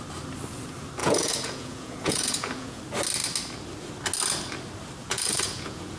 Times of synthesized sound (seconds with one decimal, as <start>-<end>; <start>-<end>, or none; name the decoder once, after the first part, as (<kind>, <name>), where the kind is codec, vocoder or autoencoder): 1.0-2.8 (vocoder, Vocos); 5.0-6.0